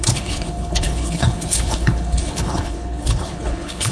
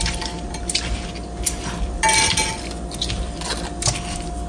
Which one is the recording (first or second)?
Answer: second